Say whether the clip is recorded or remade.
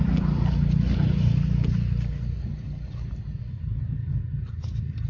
recorded